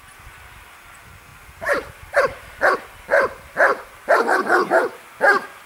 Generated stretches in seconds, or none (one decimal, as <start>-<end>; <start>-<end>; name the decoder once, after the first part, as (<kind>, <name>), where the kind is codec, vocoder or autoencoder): 1.3-4.7 (vocoder, BigVGAN v2)